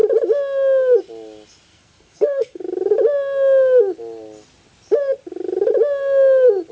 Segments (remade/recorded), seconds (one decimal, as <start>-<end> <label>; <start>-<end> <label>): 0.0-1.7 recorded; 1.7-2.6 remade; 2.6-6.7 recorded